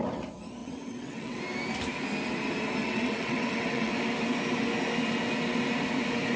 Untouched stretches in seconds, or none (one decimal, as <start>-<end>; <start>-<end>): 0.0-0.6; 1.4-2.8; 3.9-6.4